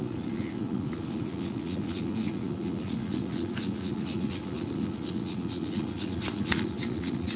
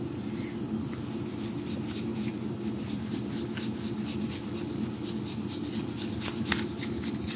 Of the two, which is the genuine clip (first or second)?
second